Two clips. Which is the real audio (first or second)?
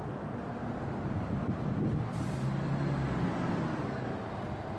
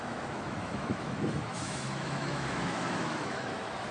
first